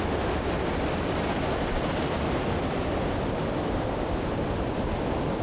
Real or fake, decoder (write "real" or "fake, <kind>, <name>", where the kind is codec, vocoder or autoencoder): fake, vocoder, BigVGAN v2